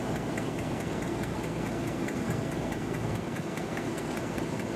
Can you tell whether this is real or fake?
fake